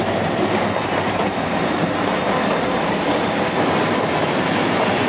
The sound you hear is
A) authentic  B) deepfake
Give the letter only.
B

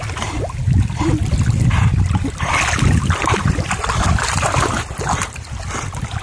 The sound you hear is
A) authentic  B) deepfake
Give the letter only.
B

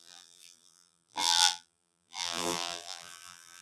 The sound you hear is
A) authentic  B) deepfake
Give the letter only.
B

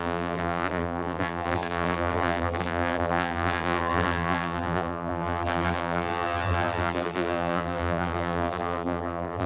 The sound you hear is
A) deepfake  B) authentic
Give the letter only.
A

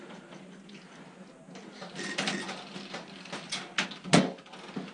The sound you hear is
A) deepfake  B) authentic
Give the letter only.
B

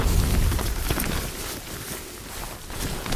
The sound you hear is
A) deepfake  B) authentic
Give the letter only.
B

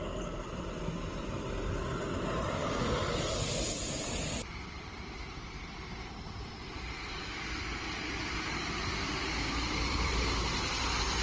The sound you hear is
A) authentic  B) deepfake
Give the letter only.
B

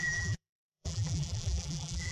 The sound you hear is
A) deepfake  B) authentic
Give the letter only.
A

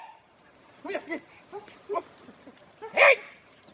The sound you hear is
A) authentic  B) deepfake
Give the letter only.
B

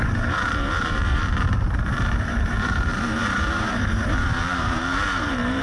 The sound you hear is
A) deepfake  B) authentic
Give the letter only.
A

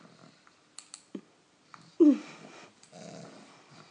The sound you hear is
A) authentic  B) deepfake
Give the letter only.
A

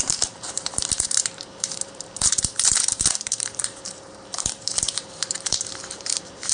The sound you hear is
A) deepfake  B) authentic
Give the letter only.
A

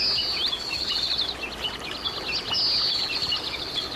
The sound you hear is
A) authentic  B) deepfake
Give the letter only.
A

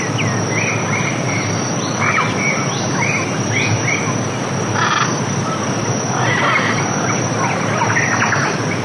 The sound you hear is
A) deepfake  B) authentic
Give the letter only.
B